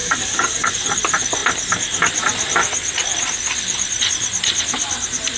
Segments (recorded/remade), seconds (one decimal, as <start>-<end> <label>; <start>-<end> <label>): 0.0-0.7 remade; 0.7-5.4 recorded